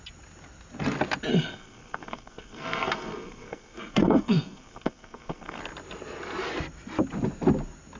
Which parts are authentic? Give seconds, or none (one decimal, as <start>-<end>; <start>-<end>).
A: 0.0-1.3; 5.6-8.0